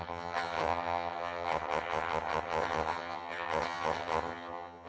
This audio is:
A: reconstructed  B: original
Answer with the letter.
A